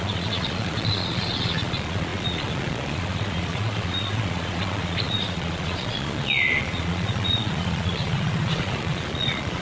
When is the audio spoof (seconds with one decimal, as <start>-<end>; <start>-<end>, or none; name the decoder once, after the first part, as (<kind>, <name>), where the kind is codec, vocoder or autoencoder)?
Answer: 0.0-9.6 (vocoder, Vocos)